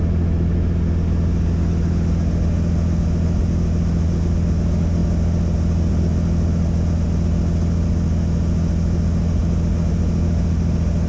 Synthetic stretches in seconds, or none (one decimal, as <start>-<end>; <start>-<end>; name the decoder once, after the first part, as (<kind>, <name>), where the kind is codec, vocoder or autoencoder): none